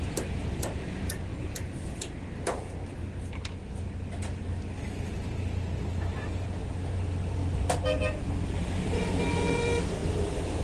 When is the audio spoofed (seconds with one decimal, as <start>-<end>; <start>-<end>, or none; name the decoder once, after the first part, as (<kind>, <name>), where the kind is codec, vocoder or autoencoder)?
0.0-1.3 (vocoder, BigVGAN v2); 5.9-6.6; 8.8-10.0